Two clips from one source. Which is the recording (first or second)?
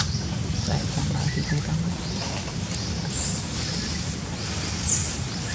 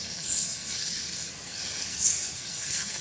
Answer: first